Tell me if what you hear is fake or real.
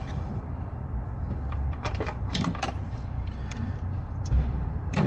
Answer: fake